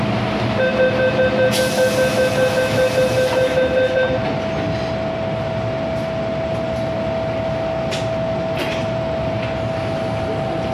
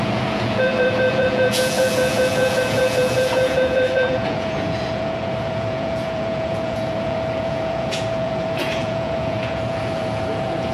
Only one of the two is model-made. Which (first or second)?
second